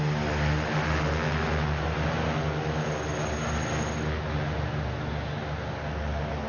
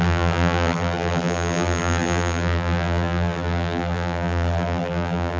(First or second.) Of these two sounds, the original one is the first